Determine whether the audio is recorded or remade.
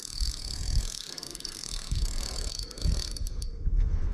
remade